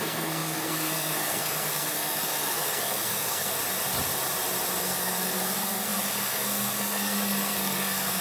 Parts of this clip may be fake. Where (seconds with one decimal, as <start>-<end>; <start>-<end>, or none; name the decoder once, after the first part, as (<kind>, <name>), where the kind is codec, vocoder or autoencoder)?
0.0-3.6 (codec, SNAC); 4.8-8.2